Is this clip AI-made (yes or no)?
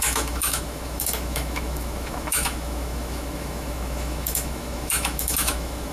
yes